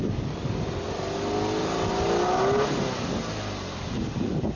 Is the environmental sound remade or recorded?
recorded